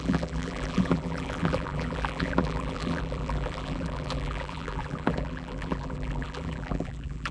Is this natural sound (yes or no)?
no